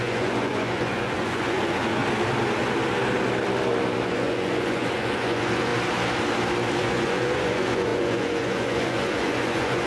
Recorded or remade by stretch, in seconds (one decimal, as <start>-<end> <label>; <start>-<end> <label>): 0.0-2.0 remade; 2.0-4.0 recorded; 4.0-5.7 remade; 5.7-6.8 recorded; 6.8-9.9 remade

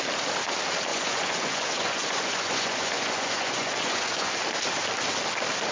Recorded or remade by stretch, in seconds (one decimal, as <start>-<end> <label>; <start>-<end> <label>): 0.0-0.9 recorded; 0.9-4.3 remade; 4.3-5.7 recorded

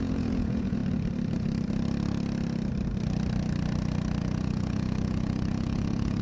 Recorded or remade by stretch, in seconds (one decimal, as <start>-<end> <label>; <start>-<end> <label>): 0.0-0.8 remade; 0.8-4.2 recorded; 4.2-6.2 remade

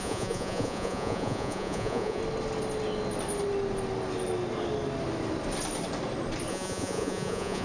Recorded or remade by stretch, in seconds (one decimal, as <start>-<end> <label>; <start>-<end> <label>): 0.0-2.2 remade; 2.2-6.5 recorded; 6.5-7.6 remade

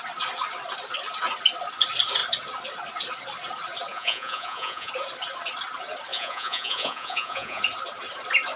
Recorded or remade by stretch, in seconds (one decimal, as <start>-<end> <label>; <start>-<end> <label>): 0.0-3.9 recorded; 3.9-4.9 remade; 4.9-6.1 recorded; 6.1-7.6 remade; 7.6-8.6 recorded

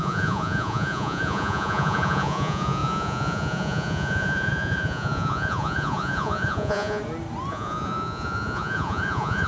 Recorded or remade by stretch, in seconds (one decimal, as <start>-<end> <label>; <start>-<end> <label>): 0.0-7.0 remade; 7.0-7.5 recorded; 7.5-9.5 remade

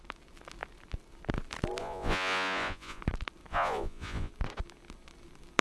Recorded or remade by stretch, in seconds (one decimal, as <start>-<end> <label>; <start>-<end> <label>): 0.0-1.8 recorded; 1.8-3.0 remade; 3.0-3.5 recorded; 3.5-4.3 remade; 4.3-5.6 recorded